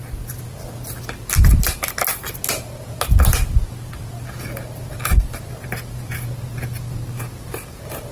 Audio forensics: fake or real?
real